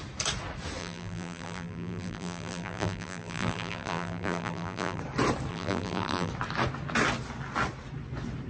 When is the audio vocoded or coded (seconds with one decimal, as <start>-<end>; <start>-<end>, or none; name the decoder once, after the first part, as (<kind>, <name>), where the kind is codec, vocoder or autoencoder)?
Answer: 0.8-5.0 (vocoder, BigVGAN v2); 5.5-6.3